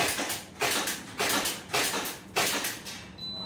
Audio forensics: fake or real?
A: real